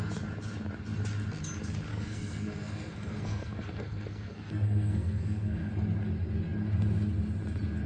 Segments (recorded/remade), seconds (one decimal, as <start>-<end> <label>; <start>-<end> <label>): 0.0-1.9 recorded; 1.9-5.7 remade; 5.7-7.9 recorded